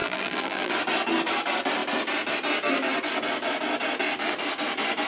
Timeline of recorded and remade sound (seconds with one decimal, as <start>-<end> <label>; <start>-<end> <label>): 0.0-0.7 remade; 0.7-5.1 recorded